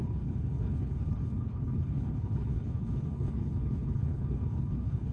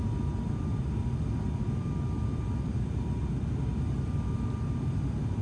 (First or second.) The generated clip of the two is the first